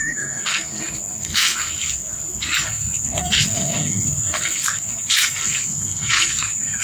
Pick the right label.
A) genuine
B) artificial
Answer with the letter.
B